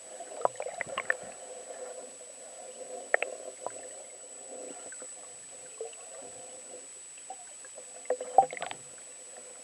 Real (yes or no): yes